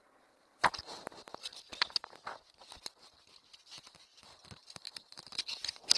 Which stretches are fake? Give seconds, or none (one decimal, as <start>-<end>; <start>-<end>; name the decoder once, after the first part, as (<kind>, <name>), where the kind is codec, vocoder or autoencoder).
4.1-5.4 (vocoder, BigVGAN v2)